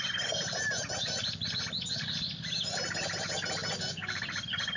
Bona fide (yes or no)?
yes